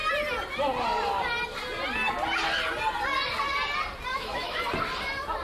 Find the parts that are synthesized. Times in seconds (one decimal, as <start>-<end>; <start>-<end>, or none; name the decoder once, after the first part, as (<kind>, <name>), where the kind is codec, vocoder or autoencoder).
4.1-4.6 (autoencoder, DAC-VAE)